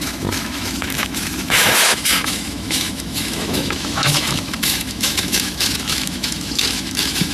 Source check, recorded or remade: remade